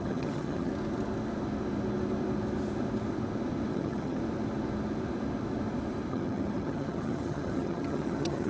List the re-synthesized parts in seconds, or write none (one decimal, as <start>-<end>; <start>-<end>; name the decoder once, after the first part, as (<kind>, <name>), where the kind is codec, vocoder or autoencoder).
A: 0.0-0.7 (vocoder, HiFi-GAN); 3.7-4.2; 6.1-8.5